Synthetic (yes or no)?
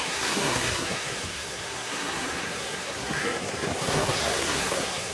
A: yes